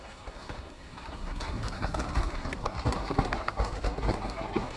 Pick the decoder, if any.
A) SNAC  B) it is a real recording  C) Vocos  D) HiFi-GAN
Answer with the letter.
A